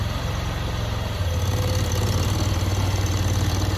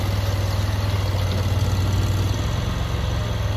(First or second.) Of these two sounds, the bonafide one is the second